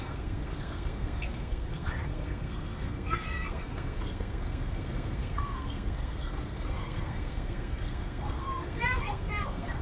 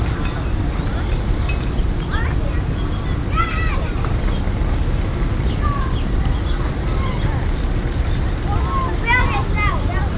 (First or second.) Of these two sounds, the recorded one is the second